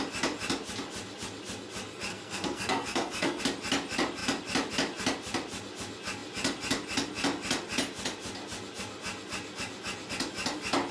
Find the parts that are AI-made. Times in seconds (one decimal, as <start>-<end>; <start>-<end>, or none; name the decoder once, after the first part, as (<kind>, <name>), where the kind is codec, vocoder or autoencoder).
2.1-3.4 (codec, SNAC)